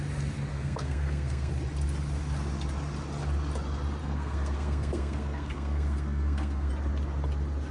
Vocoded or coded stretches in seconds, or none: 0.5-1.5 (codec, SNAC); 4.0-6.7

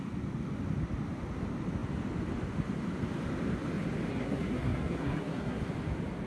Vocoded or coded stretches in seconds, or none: 4.1-5.7 (codec, SNAC)